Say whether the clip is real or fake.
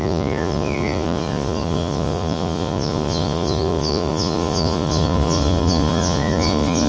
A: fake